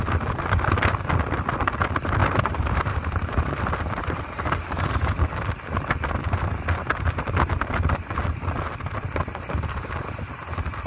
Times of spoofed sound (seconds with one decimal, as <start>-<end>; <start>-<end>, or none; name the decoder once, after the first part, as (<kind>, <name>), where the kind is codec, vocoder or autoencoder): 2.2-3.6 (vocoder, BigVGAN v2)